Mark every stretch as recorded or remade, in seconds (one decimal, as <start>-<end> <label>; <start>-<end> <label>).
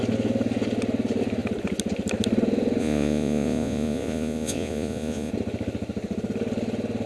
0.0-2.8 recorded; 2.8-5.3 remade; 5.3-7.1 recorded